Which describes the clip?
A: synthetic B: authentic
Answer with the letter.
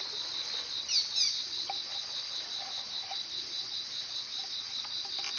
B